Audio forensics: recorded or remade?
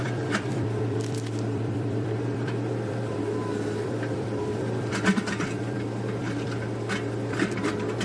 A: remade